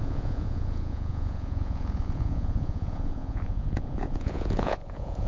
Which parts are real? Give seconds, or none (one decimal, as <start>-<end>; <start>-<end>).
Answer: none